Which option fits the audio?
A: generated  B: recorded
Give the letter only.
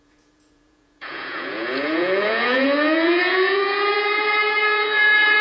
A